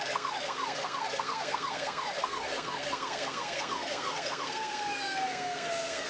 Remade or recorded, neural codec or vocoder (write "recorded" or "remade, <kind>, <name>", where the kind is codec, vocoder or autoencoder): remade, codec, SNAC